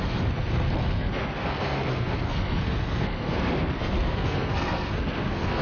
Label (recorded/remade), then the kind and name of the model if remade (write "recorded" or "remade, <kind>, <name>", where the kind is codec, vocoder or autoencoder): remade, codec, SNAC